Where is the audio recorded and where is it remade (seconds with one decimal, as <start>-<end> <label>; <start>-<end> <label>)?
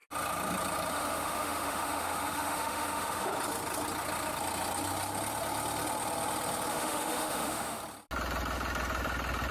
0.0-0.9 recorded; 0.9-3.3 remade; 3.3-6.7 recorded; 6.7-7.8 remade; 7.8-9.5 recorded